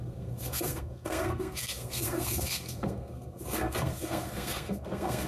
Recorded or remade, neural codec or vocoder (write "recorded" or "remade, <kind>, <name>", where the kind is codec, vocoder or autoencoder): remade, codec, SNAC